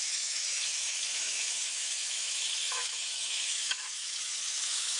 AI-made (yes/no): yes